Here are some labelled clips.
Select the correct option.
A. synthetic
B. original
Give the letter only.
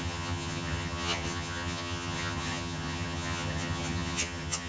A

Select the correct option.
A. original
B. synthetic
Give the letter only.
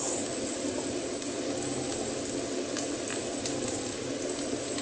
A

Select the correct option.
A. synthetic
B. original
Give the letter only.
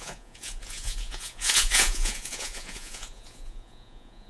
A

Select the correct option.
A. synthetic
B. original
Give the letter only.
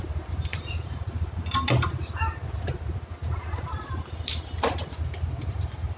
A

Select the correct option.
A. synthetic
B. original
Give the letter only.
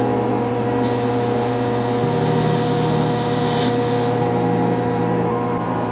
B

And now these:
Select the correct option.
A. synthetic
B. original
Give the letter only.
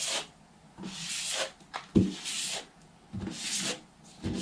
B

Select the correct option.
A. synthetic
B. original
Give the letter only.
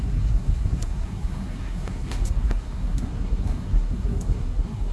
A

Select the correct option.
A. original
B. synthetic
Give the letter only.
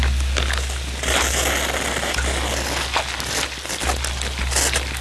A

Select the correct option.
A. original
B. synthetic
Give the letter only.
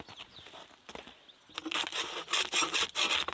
A